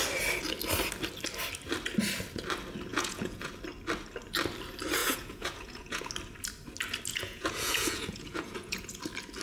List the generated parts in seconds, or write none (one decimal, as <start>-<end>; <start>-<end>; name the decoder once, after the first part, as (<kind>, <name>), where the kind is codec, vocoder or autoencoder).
2.9-3.5 (vocoder, Vocos); 5.0-6.1; 7.1-9.0